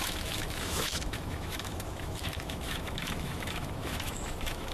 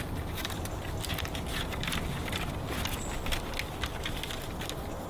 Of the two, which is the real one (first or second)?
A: second